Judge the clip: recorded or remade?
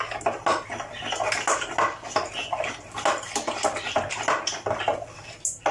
recorded